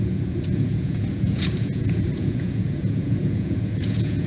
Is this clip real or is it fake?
fake